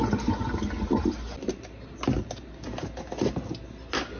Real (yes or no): yes